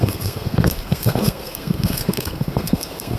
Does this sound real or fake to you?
fake